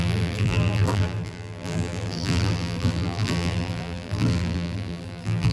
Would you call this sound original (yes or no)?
no